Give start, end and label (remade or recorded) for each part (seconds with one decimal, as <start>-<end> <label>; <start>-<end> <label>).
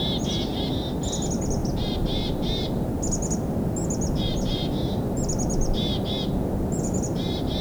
0.0-7.6 recorded